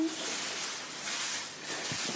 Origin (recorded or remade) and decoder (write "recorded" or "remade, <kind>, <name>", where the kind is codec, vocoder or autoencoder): recorded